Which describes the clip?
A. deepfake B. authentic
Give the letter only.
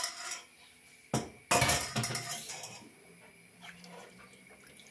B